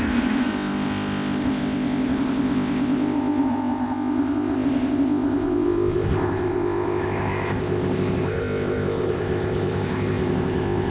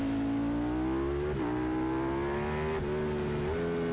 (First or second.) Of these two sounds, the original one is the second